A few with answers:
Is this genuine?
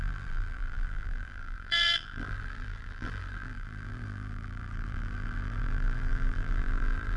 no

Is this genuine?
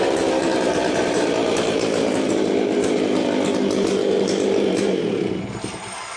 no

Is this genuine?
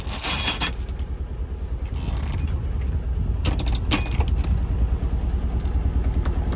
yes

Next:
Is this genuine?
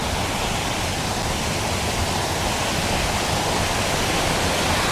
yes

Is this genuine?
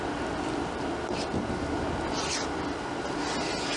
yes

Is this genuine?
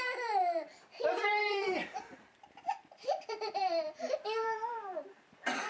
no